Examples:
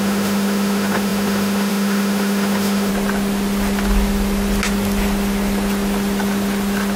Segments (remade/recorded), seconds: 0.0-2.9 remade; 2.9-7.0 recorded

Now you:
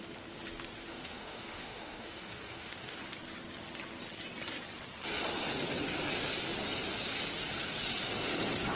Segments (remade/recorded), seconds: 0.0-0.8 recorded; 0.8-3.0 remade; 3.0-8.8 recorded

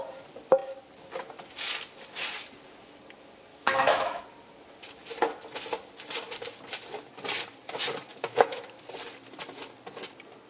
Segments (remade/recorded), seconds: 0.0-3.5 recorded; 3.5-4.2 remade; 4.2-8.1 recorded; 8.1-8.6 remade; 8.6-10.5 recorded

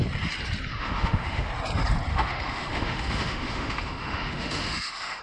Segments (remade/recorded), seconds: 0.0-0.7 recorded; 0.7-1.5 remade; 1.5-2.1 recorded; 2.1-5.2 remade

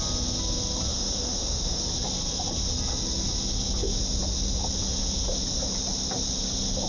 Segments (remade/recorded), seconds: 0.0-0.9 recorded; 0.9-1.8 remade; 1.8-6.9 recorded